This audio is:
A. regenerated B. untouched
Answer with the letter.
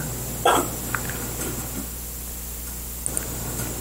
B